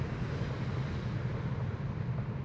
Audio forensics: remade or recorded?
recorded